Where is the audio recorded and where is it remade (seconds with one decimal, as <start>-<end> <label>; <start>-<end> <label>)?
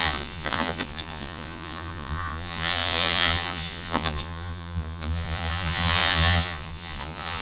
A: 0.0-7.4 remade